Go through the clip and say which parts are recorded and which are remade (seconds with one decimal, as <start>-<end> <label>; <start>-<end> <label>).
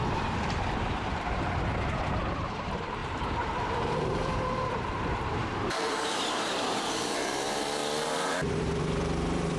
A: 0.0-7.8 remade; 7.8-8.5 recorded; 8.5-9.6 remade